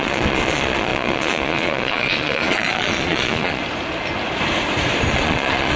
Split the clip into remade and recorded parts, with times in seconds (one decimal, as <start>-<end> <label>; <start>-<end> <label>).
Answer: 0.0-3.6 remade; 3.6-5.1 recorded; 5.1-5.8 remade